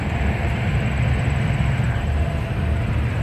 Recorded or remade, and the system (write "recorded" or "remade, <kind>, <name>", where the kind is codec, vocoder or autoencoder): remade, vocoder, BigVGAN v2